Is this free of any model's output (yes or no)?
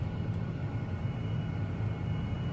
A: yes